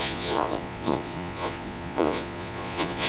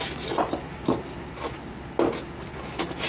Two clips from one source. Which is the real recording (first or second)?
second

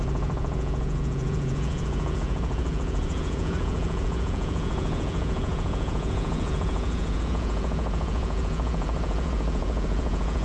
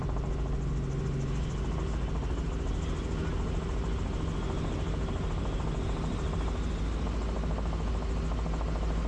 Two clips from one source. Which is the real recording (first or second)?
second